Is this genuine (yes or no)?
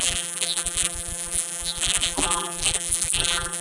no